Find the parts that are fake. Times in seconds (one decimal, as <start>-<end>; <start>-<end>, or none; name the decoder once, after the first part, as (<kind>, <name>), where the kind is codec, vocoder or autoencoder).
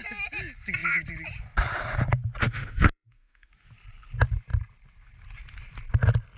2.4-3.5 (autoencoder, DAC-VAE)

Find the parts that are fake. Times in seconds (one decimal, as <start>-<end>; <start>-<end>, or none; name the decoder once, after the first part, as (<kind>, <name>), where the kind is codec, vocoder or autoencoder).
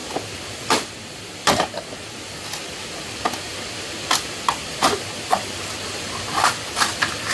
none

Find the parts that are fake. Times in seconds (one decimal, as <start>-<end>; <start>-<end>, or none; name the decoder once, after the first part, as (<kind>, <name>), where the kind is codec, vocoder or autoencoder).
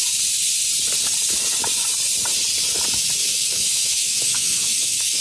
3.2-5.2 (autoencoder, DAC-VAE)